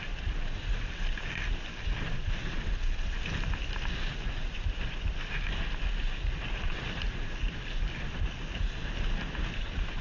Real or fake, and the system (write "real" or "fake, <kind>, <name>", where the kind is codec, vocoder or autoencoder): real